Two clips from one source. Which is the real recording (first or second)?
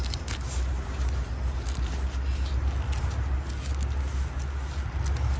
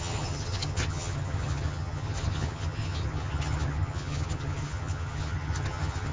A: first